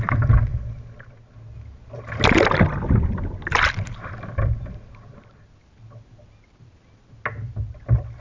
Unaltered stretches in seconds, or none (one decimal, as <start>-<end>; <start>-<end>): 0.0-8.2